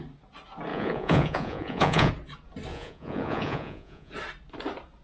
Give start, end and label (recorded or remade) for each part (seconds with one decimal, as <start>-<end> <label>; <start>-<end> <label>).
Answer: 0.0-0.7 recorded; 0.7-2.1 remade; 2.1-2.7 recorded; 2.7-4.1 remade; 4.1-5.0 recorded